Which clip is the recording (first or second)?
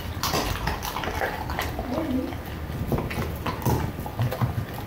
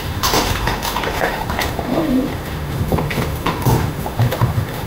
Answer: first